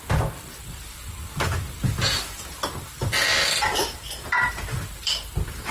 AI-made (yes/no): no